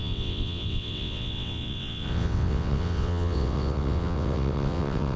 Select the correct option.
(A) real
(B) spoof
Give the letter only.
B